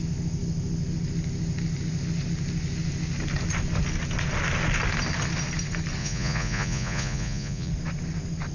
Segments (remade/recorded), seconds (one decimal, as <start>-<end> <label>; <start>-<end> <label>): 0.0-6.0 recorded; 6.0-7.7 remade; 7.7-8.5 recorded